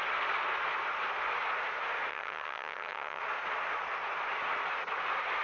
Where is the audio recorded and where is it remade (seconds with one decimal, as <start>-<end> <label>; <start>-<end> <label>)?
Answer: 0.0-2.1 recorded; 2.1-3.2 remade; 3.2-5.4 recorded